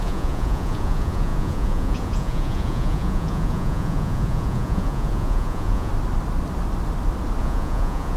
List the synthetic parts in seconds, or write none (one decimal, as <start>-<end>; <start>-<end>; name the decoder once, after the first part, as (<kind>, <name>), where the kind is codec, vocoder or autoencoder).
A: 0.0-5.9 (vocoder, Vocos); 7.4-8.2